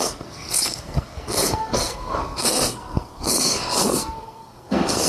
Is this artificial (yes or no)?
yes